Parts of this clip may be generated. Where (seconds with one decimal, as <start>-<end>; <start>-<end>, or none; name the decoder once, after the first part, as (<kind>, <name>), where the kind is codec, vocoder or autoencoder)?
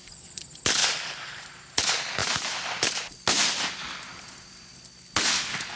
0.8-1.8 (vocoder, BigVGAN v2); 4.1-4.7